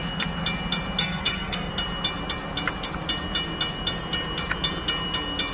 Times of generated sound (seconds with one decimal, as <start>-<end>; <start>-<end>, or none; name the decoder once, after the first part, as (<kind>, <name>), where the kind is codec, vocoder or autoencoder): 1.0-1.7 (codec, SNAC)